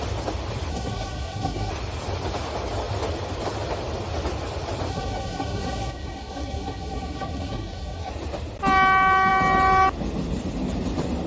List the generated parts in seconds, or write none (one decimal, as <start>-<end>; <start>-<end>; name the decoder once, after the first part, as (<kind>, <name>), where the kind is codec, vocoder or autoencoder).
0.7-1.7 (codec, SNAC); 4.9-8.1